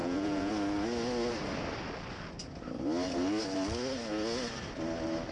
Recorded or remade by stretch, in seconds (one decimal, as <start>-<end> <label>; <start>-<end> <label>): 0.0-0.5 remade; 0.5-5.3 recorded